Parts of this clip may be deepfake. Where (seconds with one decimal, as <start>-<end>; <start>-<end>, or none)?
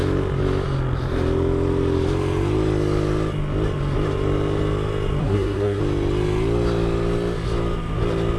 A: 5.2-5.8